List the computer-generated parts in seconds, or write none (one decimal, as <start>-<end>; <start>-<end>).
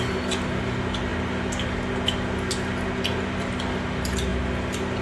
none